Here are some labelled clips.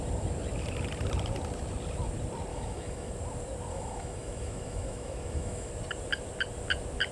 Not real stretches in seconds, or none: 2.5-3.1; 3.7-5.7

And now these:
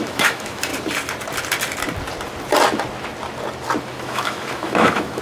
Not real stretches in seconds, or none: 0.0-0.7; 3.8-5.2

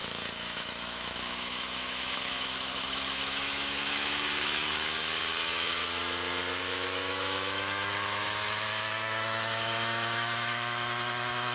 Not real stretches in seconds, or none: 0.0-5.8; 6.6-11.5

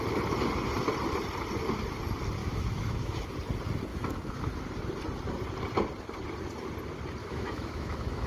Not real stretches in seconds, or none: 2.4-3.3; 3.9-4.5; 7.2-8.3

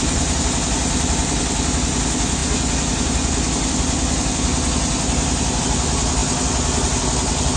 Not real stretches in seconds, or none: none

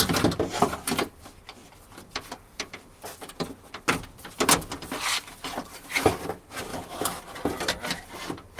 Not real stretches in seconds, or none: 6.7-7.2